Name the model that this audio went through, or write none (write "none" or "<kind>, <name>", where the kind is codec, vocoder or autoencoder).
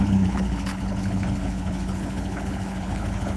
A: codec, HILCodec